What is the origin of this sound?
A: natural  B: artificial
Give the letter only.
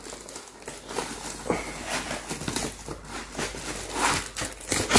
A